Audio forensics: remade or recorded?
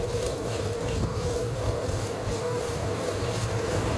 remade